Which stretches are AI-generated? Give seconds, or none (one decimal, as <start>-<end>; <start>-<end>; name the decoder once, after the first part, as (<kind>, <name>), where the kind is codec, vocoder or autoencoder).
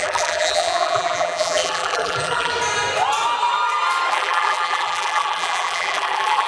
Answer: 0.0-2.5 (vocoder, BigVGAN v2); 4.1-6.5